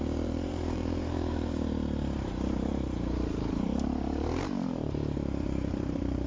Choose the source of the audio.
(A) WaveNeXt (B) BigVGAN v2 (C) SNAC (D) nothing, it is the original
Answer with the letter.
B